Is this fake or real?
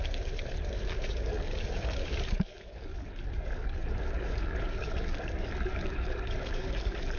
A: fake